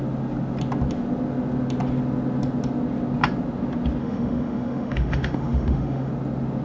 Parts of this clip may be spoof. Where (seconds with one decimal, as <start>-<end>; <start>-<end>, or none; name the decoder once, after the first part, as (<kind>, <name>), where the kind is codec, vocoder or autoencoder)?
4.0-6.1 (autoencoder, DAC-VAE)